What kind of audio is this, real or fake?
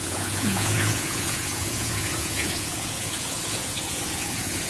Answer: fake